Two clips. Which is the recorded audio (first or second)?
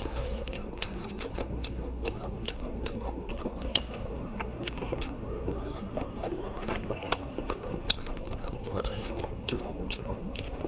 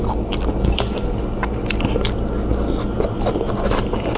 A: second